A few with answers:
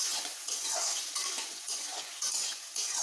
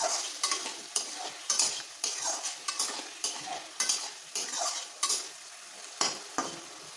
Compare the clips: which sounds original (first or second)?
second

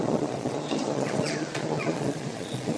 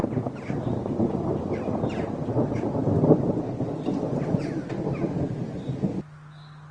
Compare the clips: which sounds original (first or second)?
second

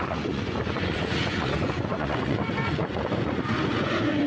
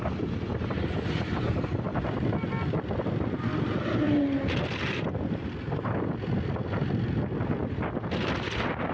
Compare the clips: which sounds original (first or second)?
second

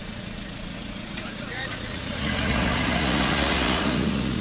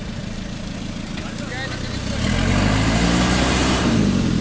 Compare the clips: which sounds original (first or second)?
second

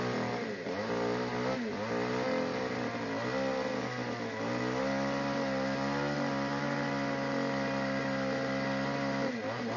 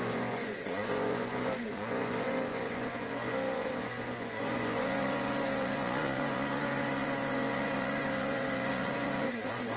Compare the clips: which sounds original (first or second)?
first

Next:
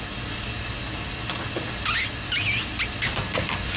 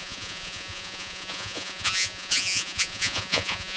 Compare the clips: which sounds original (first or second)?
first